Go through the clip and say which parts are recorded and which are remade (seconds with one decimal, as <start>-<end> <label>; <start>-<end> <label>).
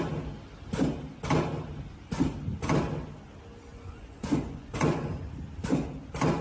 0.0-3.7 recorded; 3.7-5.2 remade; 5.2-6.4 recorded